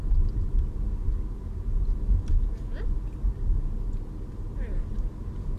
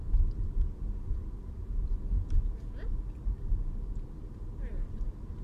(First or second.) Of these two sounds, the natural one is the first